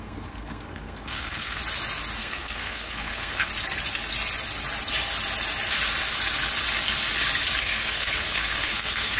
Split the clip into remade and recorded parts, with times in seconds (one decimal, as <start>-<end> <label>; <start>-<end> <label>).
0.0-1.6 remade; 1.6-2.2 recorded; 2.2-3.5 remade; 3.5-7.6 recorded; 7.6-9.2 remade